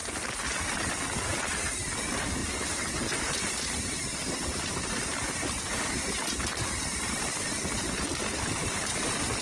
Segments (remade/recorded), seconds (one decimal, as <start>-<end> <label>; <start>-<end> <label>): 0.0-2.4 recorded; 2.4-7.3 remade; 7.3-9.4 recorded